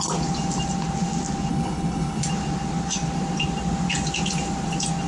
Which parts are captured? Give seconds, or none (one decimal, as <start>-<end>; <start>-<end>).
0.0-1.5; 2.2-5.1